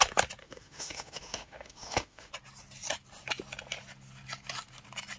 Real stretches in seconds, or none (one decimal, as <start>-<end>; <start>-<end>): 0.0-0.4; 2.3-5.2